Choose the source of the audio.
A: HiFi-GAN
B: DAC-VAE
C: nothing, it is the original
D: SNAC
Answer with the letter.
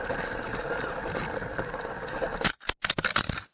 C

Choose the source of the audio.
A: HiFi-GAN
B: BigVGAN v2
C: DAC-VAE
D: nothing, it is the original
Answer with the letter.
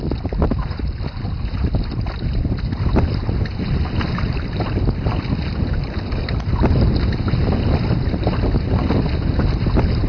D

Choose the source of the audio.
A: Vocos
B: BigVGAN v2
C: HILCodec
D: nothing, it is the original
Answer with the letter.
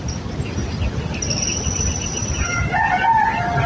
D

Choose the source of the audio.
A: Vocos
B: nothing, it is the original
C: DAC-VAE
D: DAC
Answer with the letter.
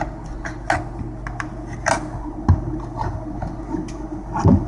B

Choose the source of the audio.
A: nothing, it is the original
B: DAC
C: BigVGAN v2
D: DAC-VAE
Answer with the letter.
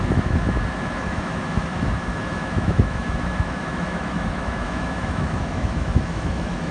D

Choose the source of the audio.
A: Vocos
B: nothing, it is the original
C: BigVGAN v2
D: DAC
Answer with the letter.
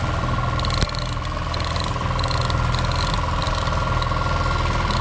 B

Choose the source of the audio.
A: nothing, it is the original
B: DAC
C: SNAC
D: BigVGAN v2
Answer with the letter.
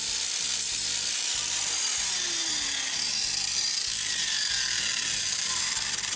D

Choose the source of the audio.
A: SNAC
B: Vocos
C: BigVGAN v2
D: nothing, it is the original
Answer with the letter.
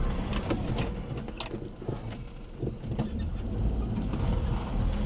D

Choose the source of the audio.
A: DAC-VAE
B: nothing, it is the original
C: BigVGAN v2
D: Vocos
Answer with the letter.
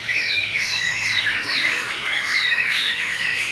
A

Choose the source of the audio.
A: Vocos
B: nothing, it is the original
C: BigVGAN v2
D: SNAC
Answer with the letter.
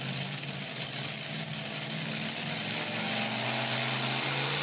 B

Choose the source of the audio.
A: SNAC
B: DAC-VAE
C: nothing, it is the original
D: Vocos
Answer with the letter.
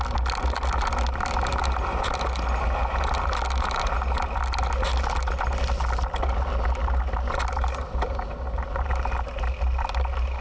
C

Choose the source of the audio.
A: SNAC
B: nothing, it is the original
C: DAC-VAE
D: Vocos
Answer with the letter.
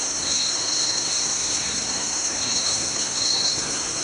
A